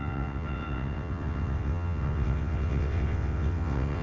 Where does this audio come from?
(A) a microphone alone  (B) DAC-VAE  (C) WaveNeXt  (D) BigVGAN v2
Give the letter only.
C